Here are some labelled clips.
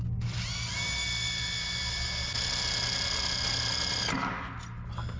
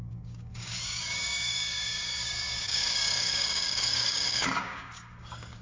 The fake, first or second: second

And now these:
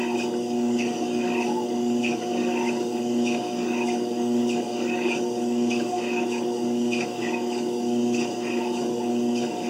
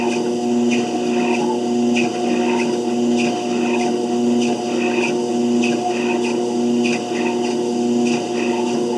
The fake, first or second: first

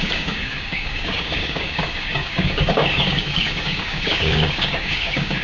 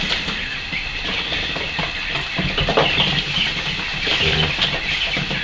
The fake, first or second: first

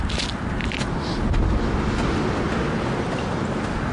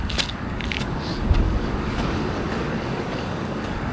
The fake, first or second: second